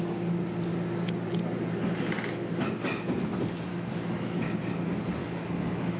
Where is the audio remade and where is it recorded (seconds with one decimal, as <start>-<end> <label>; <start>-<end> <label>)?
0.0-3.7 recorded; 3.7-4.4 remade; 4.4-5.2 recorded; 5.2-6.0 remade